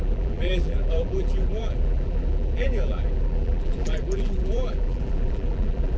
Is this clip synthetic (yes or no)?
yes